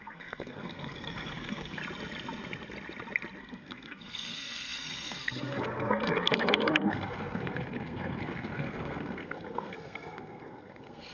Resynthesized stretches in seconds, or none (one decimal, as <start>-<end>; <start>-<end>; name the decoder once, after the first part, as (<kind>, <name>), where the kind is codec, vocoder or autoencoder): 0.0-1.8 (codec, SNAC); 3.4-11.1